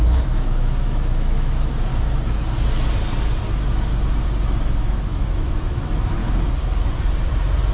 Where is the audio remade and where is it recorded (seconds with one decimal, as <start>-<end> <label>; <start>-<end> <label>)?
0.0-1.9 remade; 1.9-4.8 recorded; 4.8-6.2 remade; 6.2-7.7 recorded